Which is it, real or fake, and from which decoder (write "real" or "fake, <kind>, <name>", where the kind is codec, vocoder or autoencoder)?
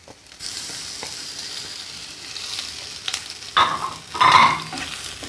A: real